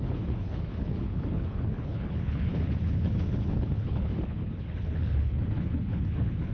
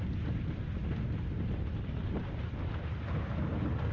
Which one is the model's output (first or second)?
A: first